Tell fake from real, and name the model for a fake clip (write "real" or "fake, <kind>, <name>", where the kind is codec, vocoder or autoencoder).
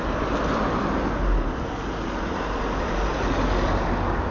real